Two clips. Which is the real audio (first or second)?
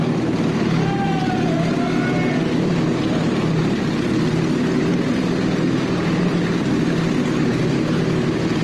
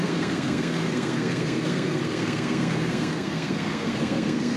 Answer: first